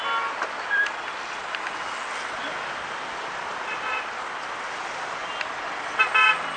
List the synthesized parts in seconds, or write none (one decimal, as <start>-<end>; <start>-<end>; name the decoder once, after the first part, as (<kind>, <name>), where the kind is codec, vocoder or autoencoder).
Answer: none